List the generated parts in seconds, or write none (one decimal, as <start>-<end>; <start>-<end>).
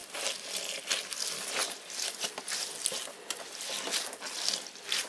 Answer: none